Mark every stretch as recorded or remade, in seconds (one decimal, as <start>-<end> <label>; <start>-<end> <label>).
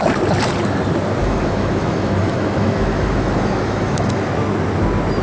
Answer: 0.0-1.2 recorded; 1.2-4.3 remade; 4.3-5.2 recorded